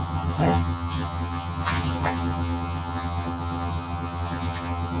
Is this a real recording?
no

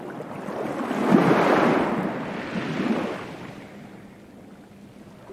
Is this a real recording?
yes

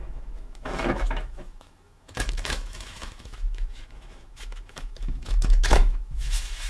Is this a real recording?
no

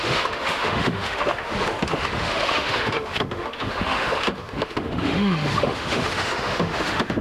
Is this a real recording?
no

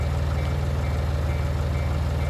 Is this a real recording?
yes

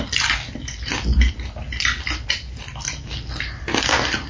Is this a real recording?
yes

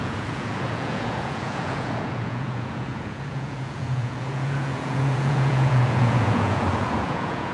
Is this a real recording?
no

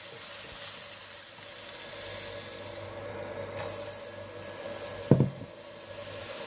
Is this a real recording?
yes